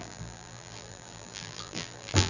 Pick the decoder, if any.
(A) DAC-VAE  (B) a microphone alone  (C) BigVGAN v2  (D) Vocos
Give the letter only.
C